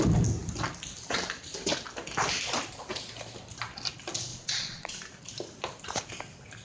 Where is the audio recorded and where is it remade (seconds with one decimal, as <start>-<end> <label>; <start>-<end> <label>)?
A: 0.0-4.3 recorded; 4.3-5.0 remade; 5.0-6.6 recorded